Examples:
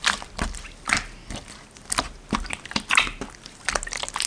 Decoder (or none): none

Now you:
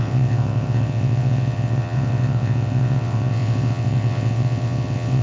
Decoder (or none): vocoder, WaveNeXt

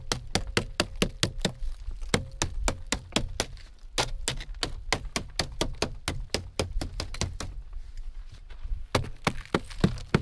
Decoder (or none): none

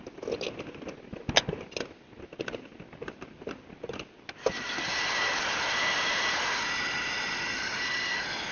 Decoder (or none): none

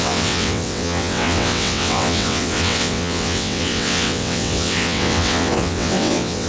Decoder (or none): vocoder, WaveNeXt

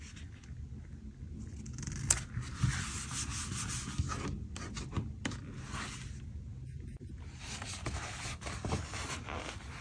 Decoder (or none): none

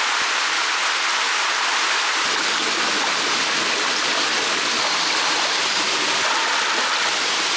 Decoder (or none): none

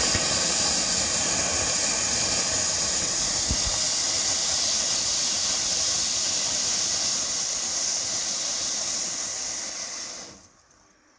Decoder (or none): none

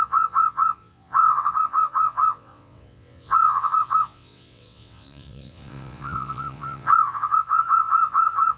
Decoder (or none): vocoder, WaveNeXt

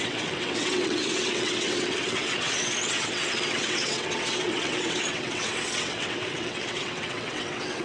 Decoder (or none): vocoder, WaveNeXt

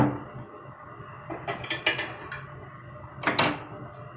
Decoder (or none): none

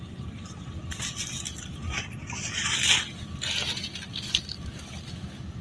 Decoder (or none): none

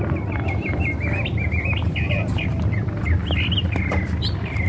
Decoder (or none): none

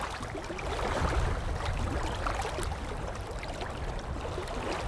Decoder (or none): none